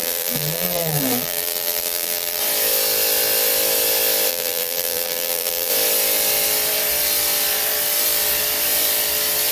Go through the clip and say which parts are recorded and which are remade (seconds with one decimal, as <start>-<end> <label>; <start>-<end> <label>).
0.0-2.4 remade; 2.4-4.3 recorded; 4.3-5.7 remade; 5.7-9.5 recorded